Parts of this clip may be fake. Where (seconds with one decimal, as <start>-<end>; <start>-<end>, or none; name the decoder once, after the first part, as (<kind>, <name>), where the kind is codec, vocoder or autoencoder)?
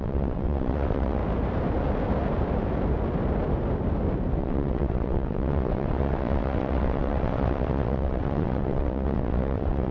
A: 0.0-1.2 (vocoder, WaveNeXt); 4.4-9.9